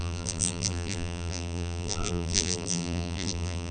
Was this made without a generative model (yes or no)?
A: no